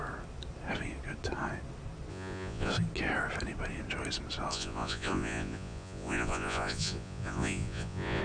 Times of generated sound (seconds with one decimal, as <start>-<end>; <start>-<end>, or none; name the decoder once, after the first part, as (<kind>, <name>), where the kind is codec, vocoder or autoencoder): 2.1-2.7 (vocoder, Vocos); 4.5-8.2